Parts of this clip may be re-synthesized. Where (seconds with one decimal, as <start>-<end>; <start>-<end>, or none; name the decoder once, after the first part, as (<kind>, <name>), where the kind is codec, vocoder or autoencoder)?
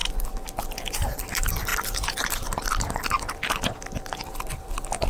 none